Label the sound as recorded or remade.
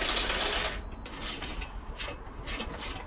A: recorded